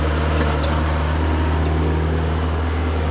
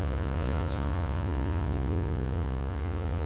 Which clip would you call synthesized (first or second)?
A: second